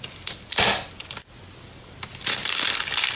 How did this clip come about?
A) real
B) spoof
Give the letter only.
A